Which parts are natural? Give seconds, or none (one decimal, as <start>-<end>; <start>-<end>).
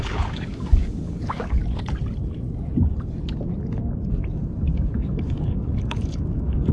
1.6-4.7